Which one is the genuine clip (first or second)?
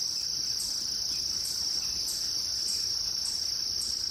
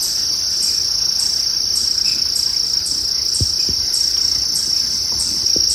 second